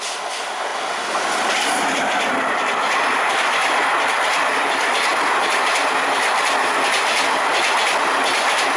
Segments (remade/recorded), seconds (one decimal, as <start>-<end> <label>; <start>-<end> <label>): 0.0-8.8 recorded